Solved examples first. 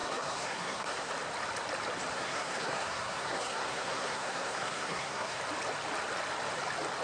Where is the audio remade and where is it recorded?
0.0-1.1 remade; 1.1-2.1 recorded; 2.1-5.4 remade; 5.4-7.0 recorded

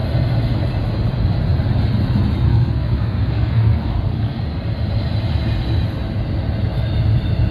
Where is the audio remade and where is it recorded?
0.0-2.5 recorded; 2.5-4.4 remade; 4.4-7.5 recorded

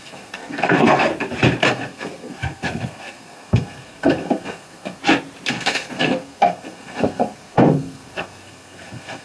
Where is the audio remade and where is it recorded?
0.0-1.1 remade; 1.1-1.7 recorded; 1.7-5.0 remade; 5.0-5.5 recorded; 5.5-9.2 remade

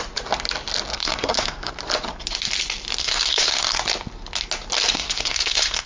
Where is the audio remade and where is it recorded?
0.0-0.9 recorded; 0.9-1.7 remade; 1.7-3.0 recorded; 3.0-3.8 remade; 3.8-4.9 recorded; 4.9-5.9 remade

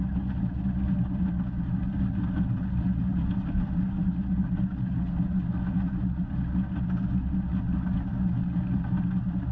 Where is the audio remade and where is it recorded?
0.0-9.5 recorded

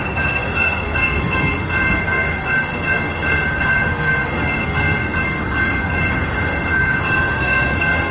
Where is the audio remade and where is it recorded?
0.0-8.1 remade

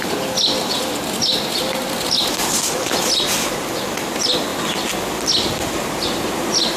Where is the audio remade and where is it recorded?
0.0-6.8 recorded

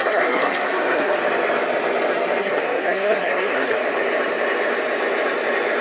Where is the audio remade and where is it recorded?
0.0-1.2 remade; 1.2-2.4 recorded; 2.4-3.8 remade; 3.8-5.8 recorded